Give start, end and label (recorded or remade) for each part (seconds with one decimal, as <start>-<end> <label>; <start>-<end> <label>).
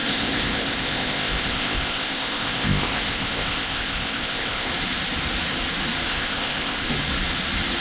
0.0-4.7 remade; 4.7-6.1 recorded; 6.1-6.9 remade; 6.9-7.8 recorded